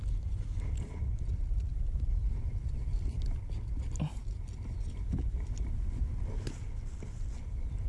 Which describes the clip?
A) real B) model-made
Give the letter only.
A